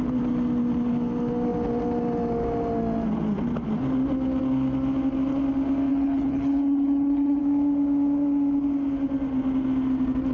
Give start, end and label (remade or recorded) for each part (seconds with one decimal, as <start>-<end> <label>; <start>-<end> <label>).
0.0-5.9 recorded; 5.9-7.4 remade; 7.4-10.3 recorded